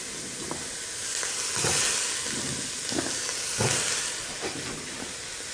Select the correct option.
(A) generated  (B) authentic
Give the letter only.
B